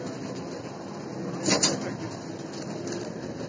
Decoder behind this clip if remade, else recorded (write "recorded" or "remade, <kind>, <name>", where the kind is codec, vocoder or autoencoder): recorded